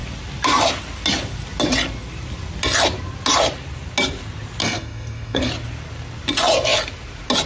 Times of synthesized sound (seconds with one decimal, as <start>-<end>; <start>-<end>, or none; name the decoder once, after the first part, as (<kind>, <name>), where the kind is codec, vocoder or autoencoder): 4.6-5.5 (codec, SNAC)